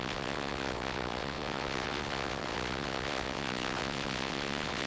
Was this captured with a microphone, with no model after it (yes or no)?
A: no